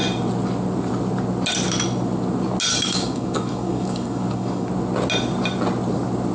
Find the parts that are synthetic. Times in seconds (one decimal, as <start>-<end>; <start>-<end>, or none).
2.7-4.7